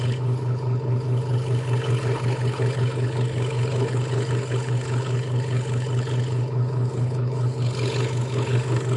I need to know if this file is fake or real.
fake